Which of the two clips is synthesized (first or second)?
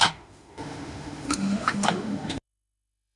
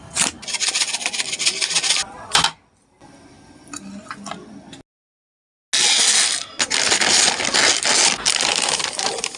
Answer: first